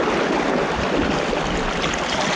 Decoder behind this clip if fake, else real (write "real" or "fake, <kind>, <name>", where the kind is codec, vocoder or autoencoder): real